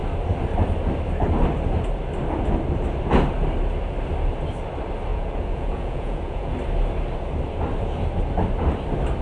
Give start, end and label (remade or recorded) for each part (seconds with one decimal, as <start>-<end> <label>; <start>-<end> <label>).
0.0-5.1 recorded; 5.1-6.5 remade; 6.5-9.2 recorded